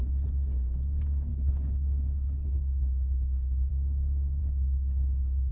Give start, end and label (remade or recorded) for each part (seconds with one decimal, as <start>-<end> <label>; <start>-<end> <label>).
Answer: 0.0-1.3 recorded; 1.3-3.7 remade; 3.7-4.4 recorded; 4.4-5.5 remade